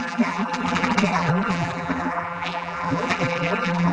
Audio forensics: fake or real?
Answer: fake